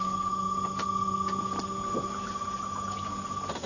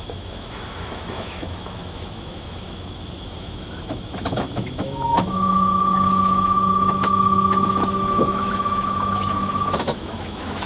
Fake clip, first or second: second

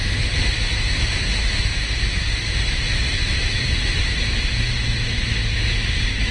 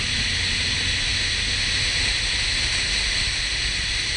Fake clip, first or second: first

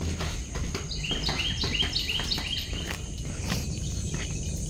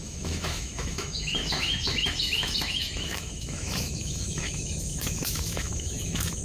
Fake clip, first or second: second